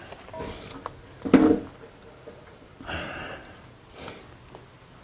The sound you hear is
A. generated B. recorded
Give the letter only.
B